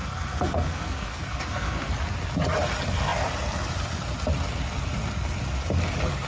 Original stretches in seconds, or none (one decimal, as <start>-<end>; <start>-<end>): 1.9-6.3